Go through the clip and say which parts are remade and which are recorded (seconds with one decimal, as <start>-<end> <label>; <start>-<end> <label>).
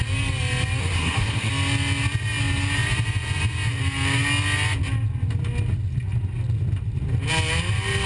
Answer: 0.0-0.8 recorded; 0.8-1.5 remade; 1.5-8.1 recorded